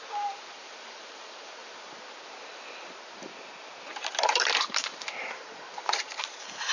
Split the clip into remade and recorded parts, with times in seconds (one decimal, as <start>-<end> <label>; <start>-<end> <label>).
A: 0.0-1.6 remade; 1.6-3.9 recorded; 3.9-6.7 remade